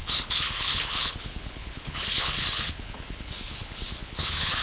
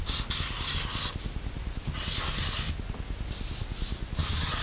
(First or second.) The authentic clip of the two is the second